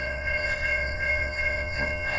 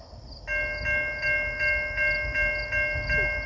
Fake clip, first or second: first